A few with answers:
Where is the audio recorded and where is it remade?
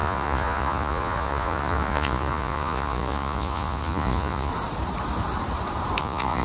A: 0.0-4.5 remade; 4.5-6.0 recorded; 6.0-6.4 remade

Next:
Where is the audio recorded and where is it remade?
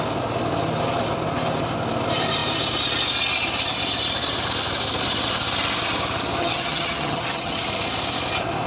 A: 0.0-6.4 recorded; 6.4-7.6 remade; 7.6-8.7 recorded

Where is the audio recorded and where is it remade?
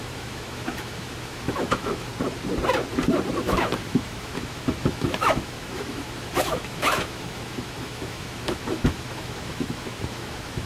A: 0.0-2.1 remade; 2.1-3.4 recorded; 3.4-10.7 remade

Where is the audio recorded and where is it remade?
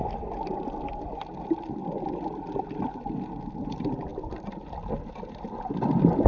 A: 0.0-6.3 recorded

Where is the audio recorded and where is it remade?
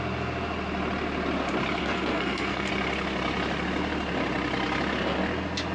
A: 0.0-1.8 recorded; 1.8-2.7 remade; 2.7-5.7 recorded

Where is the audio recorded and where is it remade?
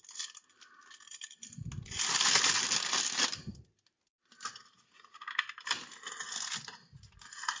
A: 0.0-7.6 recorded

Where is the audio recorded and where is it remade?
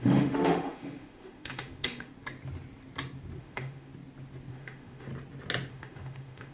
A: 0.0-2.1 remade; 2.1-3.4 recorded; 3.4-3.9 remade; 3.9-4.5 recorded; 4.5-5.1 remade; 5.1-5.7 recorded; 5.7-6.5 remade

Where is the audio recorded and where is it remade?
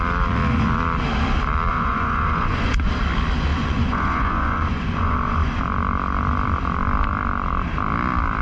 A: 0.0-1.7 recorded; 1.7-2.9 remade; 2.9-3.5 recorded; 3.5-5.6 remade; 5.6-8.4 recorded